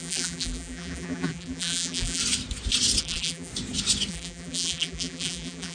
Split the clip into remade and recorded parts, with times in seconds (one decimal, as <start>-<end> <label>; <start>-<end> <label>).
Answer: 0.0-2.2 remade; 2.2-3.0 recorded; 3.0-3.5 remade; 3.5-4.1 recorded; 4.1-5.7 remade